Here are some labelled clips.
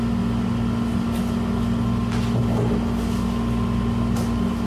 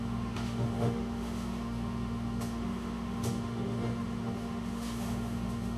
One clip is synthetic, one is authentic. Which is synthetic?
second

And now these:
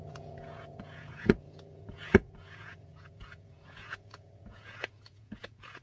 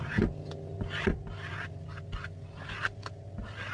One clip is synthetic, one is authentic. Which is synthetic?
first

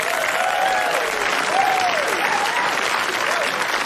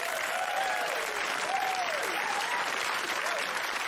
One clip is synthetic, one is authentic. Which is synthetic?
second